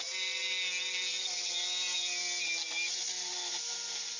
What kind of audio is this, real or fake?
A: real